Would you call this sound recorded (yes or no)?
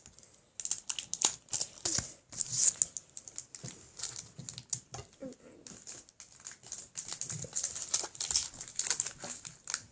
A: yes